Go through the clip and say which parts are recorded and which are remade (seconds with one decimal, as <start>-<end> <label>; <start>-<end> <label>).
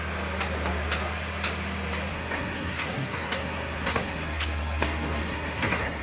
0.0-2.1 recorded; 2.1-6.0 remade